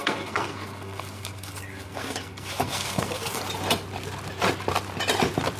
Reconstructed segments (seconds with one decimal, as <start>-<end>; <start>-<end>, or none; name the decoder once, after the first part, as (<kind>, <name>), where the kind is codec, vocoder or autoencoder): 0.0-3.4 (codec, SNAC)